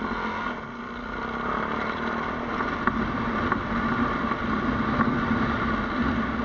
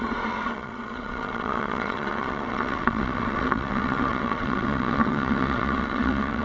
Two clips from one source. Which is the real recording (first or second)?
first